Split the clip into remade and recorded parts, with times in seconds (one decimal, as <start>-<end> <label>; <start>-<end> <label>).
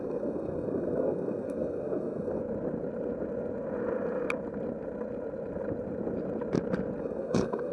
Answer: 0.0-2.4 remade; 2.4-7.0 recorded; 7.0-7.7 remade